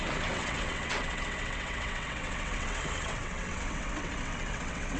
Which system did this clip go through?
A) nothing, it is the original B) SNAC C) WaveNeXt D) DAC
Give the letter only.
C